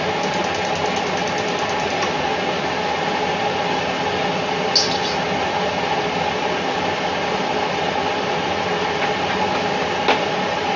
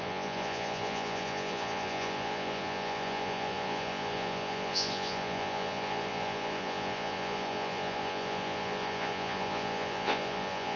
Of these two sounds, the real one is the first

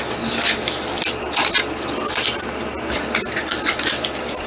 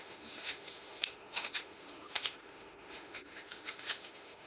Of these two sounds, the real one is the first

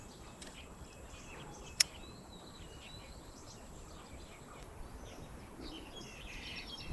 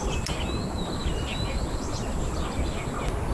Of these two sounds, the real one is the second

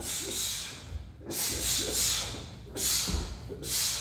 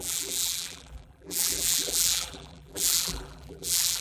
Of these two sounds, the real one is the first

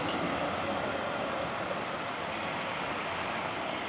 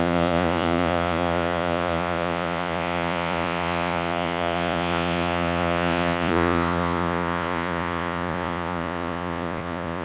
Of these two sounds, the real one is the first